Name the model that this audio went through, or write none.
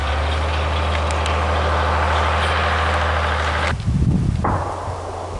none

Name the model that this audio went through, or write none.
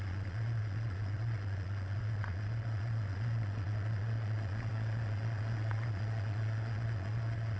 vocoder, Vocos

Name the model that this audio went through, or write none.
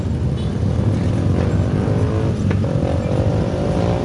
none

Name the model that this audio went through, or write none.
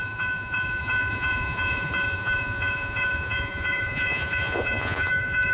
vocoder, Vocos